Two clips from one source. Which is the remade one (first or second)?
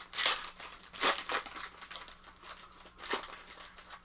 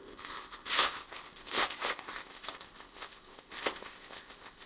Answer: second